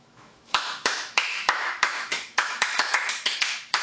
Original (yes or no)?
no